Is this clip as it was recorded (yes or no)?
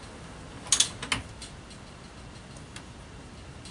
yes